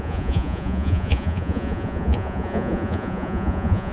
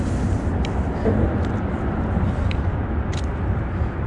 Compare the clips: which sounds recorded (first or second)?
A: second